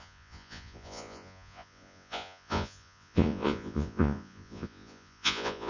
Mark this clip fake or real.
fake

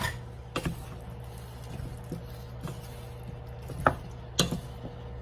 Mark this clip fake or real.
real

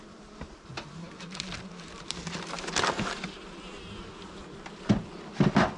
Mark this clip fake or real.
real